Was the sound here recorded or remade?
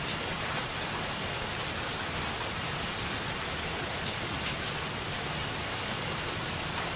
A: recorded